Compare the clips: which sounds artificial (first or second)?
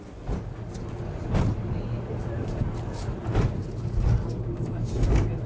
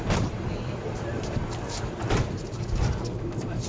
second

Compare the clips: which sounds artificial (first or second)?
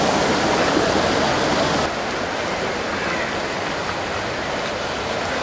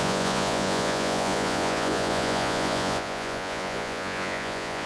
second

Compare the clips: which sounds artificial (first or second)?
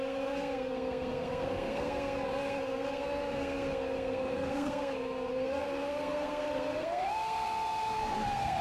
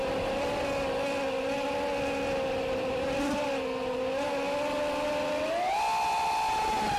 first